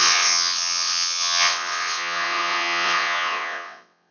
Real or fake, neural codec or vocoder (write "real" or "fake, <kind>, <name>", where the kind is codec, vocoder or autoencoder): fake, vocoder, WaveNeXt